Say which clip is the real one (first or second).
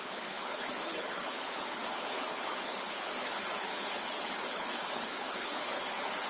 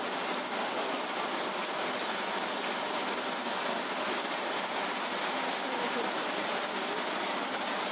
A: second